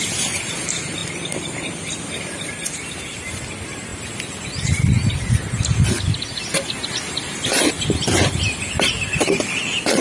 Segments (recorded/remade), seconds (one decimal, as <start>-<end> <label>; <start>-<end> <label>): 0.0-10.0 recorded